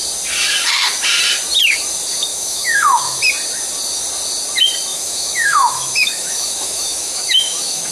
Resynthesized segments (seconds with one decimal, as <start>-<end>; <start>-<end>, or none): 2.3-3.2; 4.9-7.9